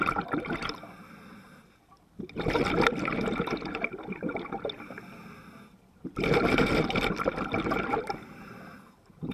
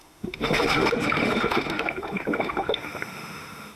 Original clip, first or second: first